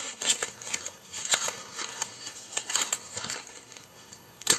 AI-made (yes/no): yes